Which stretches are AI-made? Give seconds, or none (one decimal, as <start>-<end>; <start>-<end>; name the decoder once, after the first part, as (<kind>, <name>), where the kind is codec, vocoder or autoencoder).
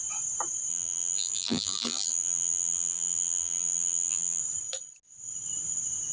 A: 0.7-4.4 (vocoder, BigVGAN v2)